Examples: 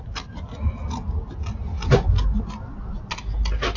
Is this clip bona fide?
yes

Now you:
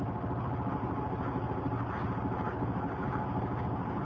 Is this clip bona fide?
yes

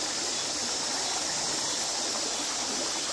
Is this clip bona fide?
yes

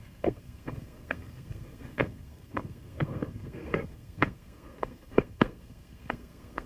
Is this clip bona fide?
no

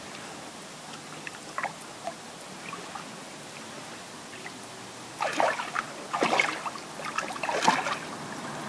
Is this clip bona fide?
yes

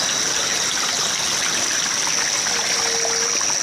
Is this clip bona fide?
yes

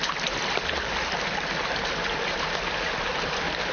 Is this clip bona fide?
yes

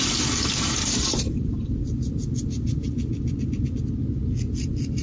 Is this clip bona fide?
yes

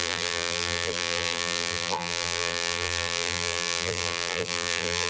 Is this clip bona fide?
no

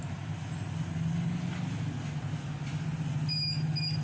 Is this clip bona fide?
yes